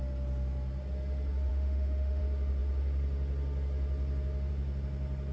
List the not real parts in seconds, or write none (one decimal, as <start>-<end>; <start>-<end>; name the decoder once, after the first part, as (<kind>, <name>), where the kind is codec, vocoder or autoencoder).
1.5-2.2 (autoencoder, DAC-VAE)